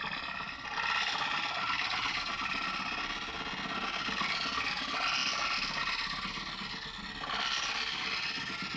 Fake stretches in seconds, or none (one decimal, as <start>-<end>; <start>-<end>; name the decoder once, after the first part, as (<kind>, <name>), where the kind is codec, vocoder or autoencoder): none